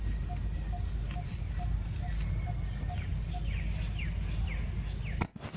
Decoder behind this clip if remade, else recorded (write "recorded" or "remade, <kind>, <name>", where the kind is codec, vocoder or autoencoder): recorded